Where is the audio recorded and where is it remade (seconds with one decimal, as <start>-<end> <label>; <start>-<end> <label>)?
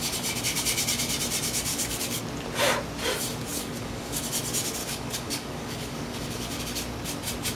0.0-1.7 recorded; 1.7-2.2 remade; 2.2-3.5 recorded; 3.5-4.2 remade; 4.2-4.8 recorded; 4.8-6.6 remade; 6.6-7.5 recorded